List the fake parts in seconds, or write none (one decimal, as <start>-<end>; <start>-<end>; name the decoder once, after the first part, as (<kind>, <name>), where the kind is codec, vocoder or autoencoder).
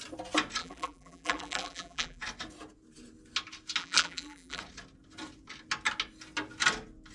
0.6-2.2 (vocoder, BigVGAN v2); 3.8-4.6